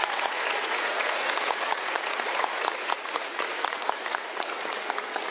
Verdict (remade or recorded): remade